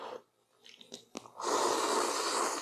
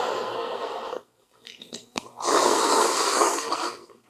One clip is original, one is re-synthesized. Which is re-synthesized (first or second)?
second